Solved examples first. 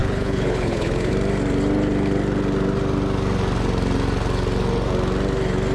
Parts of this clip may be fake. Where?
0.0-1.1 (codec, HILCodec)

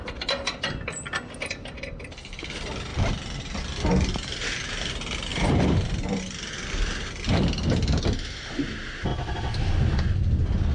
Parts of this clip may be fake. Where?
2.9-3.6 (vocoder, BigVGAN v2); 5.3-7.1

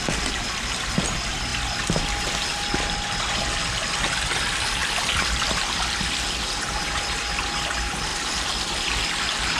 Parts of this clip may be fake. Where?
none

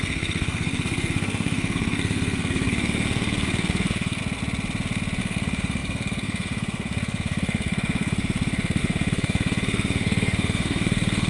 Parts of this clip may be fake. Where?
0.0-4.2 (codec, SNAC); 5.2-11.3